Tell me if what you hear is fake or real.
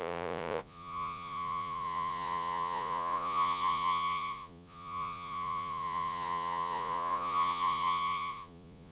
fake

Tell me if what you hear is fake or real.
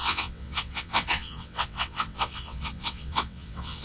fake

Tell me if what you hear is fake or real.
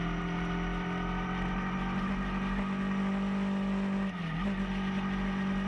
real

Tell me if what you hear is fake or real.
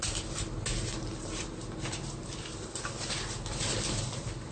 real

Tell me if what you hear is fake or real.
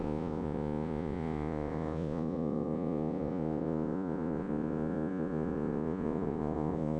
fake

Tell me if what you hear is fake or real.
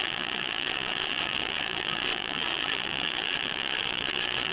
fake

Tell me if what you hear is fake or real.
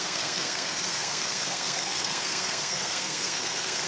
fake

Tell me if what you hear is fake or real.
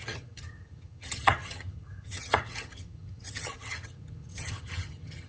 fake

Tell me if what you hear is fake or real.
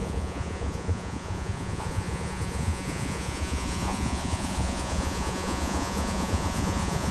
fake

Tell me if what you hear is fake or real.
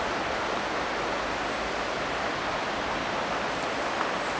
real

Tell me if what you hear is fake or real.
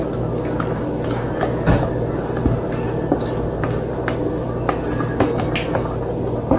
real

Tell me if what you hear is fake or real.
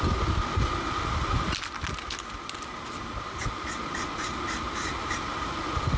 real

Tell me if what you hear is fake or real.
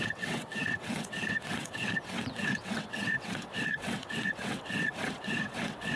fake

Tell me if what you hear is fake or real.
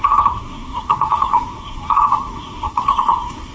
fake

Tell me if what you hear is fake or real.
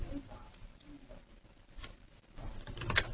real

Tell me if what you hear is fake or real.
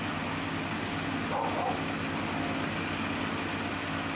real